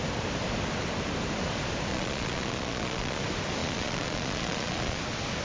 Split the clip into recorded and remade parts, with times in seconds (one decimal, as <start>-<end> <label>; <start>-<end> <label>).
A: 0.0-1.9 recorded; 1.9-3.2 remade; 3.2-3.6 recorded; 3.6-5.0 remade; 5.0-5.4 recorded